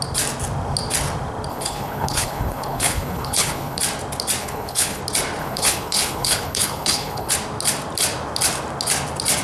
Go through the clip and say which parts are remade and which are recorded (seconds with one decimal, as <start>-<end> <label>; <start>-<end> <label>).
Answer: 0.0-1.5 recorded; 1.5-3.8 remade; 3.8-4.4 recorded; 4.4-5.0 remade; 5.0-5.4 recorded; 5.4-7.3 remade; 7.3-9.4 recorded